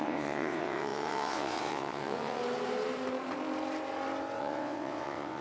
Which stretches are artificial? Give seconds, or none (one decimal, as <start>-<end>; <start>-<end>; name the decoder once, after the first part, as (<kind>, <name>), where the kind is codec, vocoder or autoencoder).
0.0-2.4 (vocoder, WaveNeXt); 4.4-5.4